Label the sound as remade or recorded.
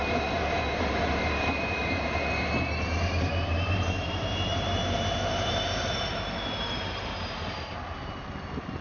remade